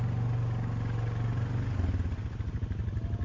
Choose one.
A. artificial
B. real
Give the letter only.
B